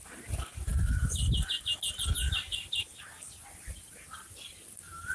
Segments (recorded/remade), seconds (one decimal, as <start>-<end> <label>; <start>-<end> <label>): 0.0-5.1 recorded